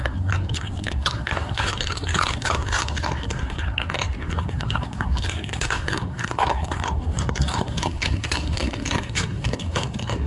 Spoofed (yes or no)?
yes